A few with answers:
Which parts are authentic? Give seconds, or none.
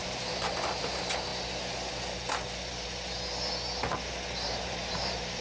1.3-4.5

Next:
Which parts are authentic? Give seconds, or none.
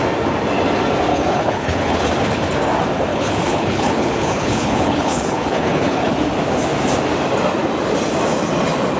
0.0-1.1; 2.1-3.1; 6.1-9.0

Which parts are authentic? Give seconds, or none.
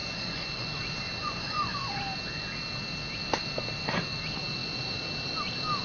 0.7-1.2; 2.0-5.8